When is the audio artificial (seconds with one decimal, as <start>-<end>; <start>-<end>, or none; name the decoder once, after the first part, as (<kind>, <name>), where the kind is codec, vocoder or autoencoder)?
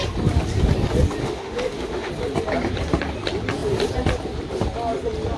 1.2-2.1 (autoencoder, DAC-VAE)